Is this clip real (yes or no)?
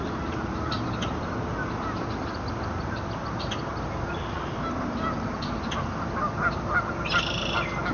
yes